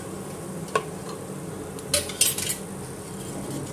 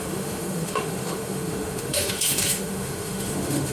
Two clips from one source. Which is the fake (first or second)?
second